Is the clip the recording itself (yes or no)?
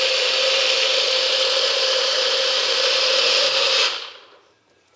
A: no